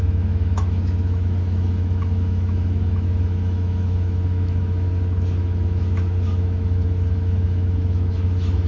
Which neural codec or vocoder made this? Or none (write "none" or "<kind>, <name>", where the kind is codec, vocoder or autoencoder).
autoencoder, DAC-VAE